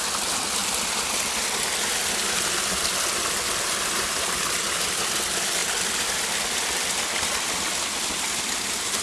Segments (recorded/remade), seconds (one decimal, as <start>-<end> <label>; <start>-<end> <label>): 0.0-9.0 recorded